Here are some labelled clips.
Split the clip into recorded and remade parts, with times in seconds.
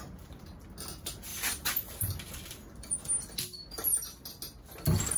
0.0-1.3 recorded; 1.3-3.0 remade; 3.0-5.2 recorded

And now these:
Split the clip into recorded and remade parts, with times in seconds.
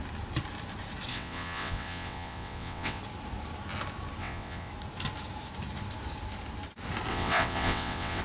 0.0-1.1 recorded; 1.1-3.0 remade; 3.0-4.2 recorded; 4.2-4.7 remade; 4.7-7.1 recorded; 7.1-8.2 remade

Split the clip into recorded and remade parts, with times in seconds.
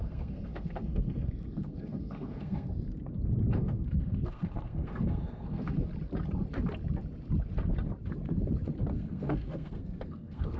0.0-2.7 remade; 2.7-3.5 recorded; 3.5-5.9 remade; 5.9-8.9 recorded; 8.9-10.6 remade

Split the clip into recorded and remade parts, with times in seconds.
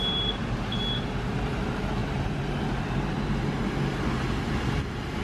0.0-5.2 recorded